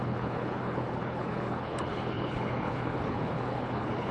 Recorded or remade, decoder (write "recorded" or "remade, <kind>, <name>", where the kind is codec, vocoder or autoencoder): remade, codec, HILCodec